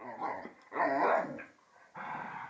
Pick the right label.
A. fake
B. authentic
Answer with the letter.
B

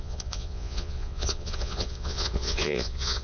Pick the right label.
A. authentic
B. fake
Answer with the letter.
B